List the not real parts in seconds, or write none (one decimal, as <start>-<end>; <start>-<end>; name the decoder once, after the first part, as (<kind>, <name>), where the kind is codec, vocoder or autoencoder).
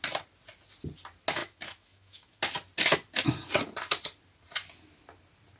1.4-2.4 (autoencoder, DAC-VAE)